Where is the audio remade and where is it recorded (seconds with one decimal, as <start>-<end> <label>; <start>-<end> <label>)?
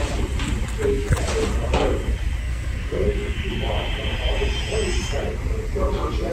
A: 0.0-2.4 recorded; 2.4-3.5 remade; 3.5-6.3 recorded